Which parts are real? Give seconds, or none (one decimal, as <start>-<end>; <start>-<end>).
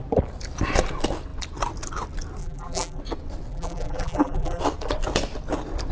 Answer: 0.0-2.4; 3.0-3.5; 4.6-5.9